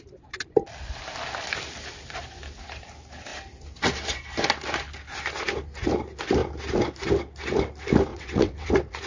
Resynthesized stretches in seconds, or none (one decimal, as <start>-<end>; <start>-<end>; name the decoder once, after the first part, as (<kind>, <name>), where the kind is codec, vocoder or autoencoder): 8.1-8.7 (vocoder, WaveNeXt)